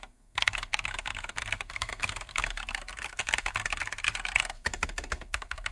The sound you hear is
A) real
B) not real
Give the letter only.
B